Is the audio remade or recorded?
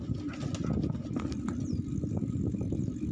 recorded